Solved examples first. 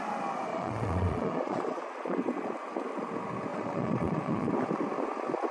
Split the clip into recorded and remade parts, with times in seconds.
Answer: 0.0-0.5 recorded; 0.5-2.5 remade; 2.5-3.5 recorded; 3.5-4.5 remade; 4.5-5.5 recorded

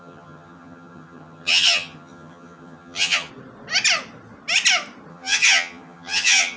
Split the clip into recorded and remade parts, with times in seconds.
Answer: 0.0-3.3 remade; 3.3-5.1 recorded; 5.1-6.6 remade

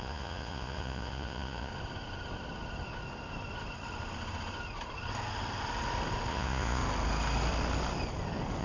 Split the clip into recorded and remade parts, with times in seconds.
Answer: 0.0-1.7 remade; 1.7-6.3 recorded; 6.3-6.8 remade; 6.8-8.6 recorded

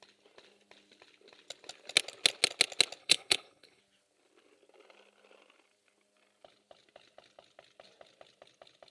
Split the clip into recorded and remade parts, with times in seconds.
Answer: 0.0-3.0 recorded; 3.0-3.8 remade; 3.8-8.9 recorded

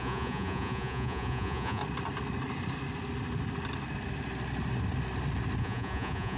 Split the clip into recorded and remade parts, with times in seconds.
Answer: 0.0-1.8 remade; 1.8-5.6 recorded; 5.6-6.4 remade